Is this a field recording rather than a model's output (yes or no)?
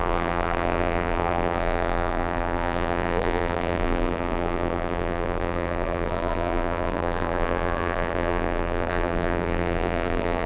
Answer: no